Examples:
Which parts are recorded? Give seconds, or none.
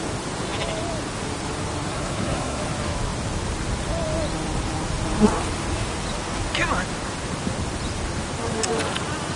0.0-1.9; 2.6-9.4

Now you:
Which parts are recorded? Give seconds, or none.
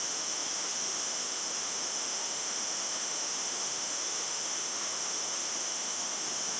none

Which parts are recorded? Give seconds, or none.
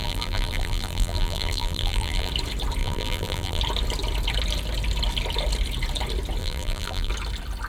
2.3-2.8; 3.6-6.4; 7.1-7.7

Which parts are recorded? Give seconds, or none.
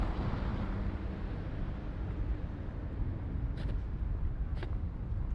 0.0-5.3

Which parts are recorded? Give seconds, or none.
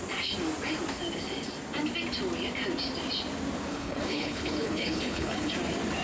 0.0-3.7; 5.5-6.0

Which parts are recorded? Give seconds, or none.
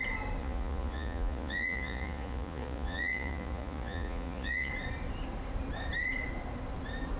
0.0-0.4; 4.7-7.2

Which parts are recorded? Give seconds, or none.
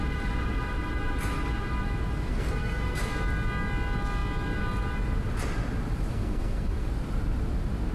0.0-2.3; 3.0-6.1; 6.9-7.9